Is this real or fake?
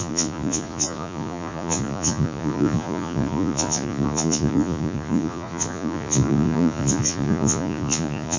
fake